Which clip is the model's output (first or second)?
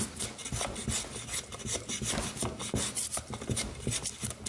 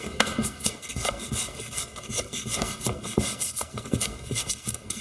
second